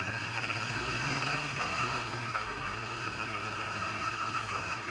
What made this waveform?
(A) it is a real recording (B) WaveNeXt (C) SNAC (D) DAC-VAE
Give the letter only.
C